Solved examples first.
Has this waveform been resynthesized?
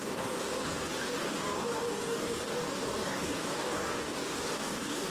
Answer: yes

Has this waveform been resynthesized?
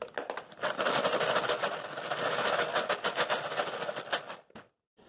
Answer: no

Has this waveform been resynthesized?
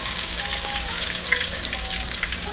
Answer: yes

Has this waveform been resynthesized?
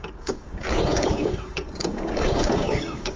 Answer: yes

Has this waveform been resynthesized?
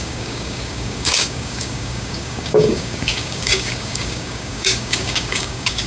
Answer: yes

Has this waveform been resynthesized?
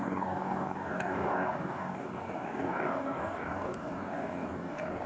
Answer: yes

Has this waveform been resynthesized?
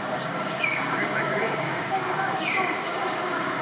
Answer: yes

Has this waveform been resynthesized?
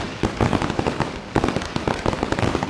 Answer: yes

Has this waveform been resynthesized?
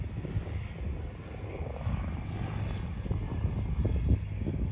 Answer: no